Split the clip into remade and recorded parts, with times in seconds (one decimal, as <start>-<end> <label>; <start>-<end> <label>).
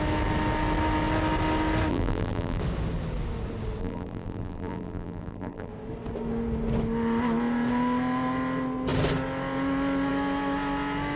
0.0-1.9 recorded; 1.9-2.6 remade; 2.6-3.8 recorded; 3.8-5.7 remade; 5.7-11.2 recorded